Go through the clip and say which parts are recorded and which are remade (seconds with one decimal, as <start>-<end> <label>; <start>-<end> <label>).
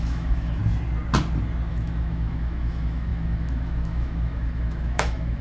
0.0-0.6 remade; 0.6-1.7 recorded; 1.7-5.4 remade